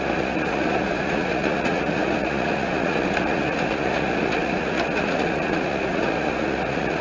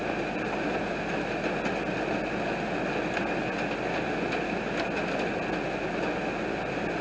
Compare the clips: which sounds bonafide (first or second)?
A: second